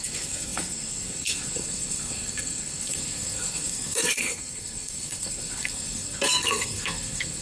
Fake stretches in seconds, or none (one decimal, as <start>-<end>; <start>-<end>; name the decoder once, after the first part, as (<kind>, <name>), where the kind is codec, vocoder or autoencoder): 0.0-7.4 (codec, SNAC)